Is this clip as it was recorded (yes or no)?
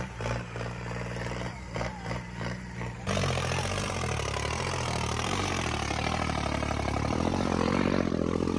no